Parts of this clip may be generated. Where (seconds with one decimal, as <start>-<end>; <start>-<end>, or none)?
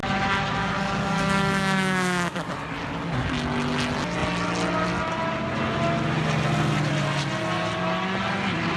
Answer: 0.6-2.5